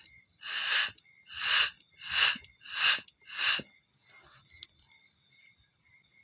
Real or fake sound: real